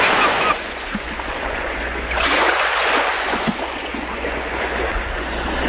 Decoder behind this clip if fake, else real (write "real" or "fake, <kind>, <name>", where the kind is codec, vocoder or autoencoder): fake, vocoder, Vocos